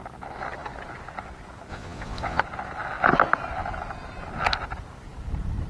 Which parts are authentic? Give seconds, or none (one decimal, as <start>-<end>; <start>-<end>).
0.0-1.7; 2.4-5.7